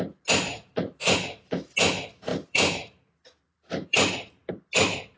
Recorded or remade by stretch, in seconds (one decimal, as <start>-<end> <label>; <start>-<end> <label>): 0.0-0.5 recorded; 0.5-1.1 remade; 1.1-2.3 recorded; 2.3-4.5 remade; 4.5-5.2 recorded

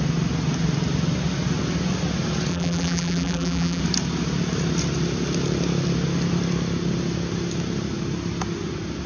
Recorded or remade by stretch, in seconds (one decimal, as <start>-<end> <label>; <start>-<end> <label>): 0.0-2.5 recorded; 2.5-3.8 remade; 3.8-9.1 recorded